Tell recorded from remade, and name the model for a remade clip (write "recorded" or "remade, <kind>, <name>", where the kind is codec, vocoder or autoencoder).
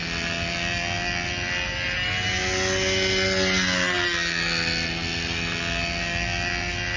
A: recorded